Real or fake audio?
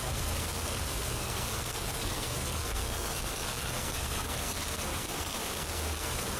fake